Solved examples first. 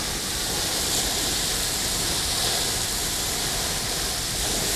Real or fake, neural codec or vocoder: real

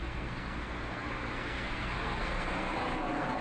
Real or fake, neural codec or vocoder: fake, codec, SNAC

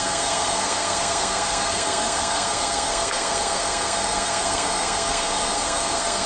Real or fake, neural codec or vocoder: fake, codec, SNAC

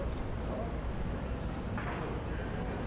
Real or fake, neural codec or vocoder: real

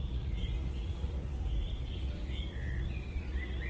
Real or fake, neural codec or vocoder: fake, vocoder, Vocos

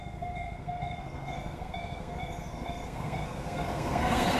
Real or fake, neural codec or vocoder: fake, codec, SNAC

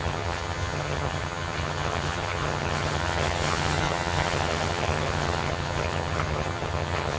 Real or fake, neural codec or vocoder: fake, vocoder, HiFi-GAN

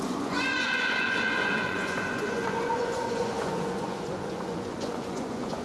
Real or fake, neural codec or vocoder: fake, vocoder, Vocos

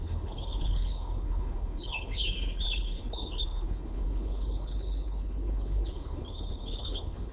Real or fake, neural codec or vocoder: fake, codec, HILCodec